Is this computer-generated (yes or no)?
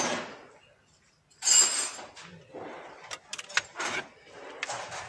no